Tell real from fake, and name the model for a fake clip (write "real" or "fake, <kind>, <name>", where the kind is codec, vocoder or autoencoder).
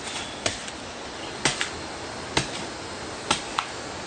real